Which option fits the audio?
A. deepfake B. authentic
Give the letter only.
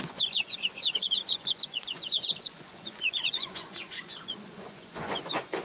A